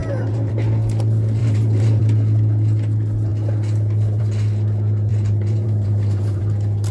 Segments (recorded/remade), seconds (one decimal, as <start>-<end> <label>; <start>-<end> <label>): 0.0-0.5 remade; 0.5-1.4 recorded; 1.4-2.0 remade; 2.0-5.1 recorded; 5.1-6.4 remade; 6.4-6.9 recorded